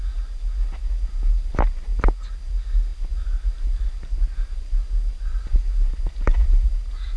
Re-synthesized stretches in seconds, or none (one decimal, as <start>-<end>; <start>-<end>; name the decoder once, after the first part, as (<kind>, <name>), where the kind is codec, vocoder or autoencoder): none

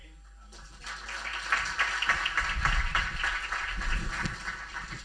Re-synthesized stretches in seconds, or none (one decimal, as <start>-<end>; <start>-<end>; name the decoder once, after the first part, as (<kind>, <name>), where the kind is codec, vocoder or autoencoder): none